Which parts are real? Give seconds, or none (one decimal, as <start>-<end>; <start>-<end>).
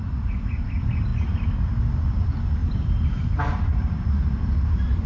1.1-2.2